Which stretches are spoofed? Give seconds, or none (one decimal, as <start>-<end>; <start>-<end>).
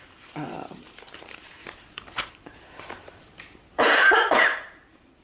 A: 0.0-5.2